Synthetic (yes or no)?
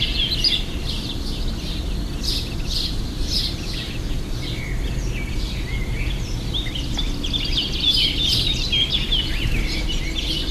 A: no